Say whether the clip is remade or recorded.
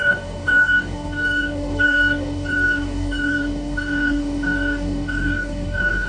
remade